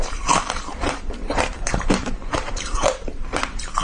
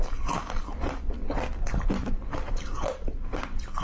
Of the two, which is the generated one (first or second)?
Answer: first